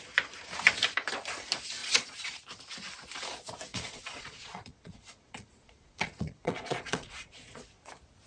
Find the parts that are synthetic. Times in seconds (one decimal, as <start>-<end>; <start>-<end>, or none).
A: 1.8-2.4; 3.7-7.9